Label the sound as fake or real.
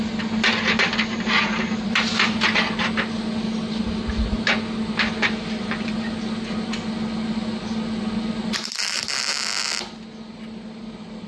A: real